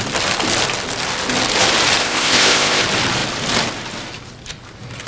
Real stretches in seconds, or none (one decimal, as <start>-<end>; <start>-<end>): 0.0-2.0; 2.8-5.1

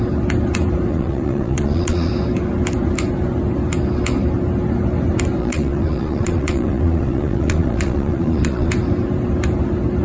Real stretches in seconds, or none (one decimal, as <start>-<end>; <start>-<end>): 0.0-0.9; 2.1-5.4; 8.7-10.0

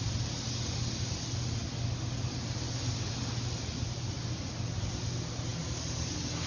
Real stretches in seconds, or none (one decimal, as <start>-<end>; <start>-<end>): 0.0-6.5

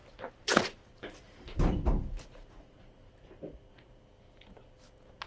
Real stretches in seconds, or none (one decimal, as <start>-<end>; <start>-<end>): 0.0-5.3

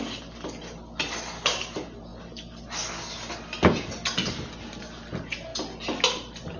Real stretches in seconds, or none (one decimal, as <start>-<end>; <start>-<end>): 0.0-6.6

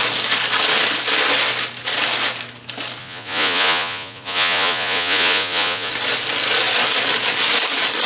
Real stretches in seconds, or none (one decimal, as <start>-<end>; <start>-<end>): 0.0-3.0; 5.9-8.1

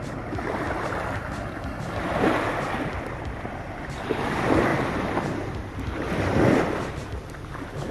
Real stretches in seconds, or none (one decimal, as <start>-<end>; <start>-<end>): 0.0-7.9